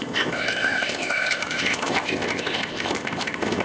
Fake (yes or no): yes